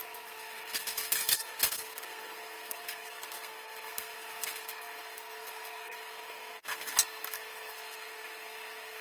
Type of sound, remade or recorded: remade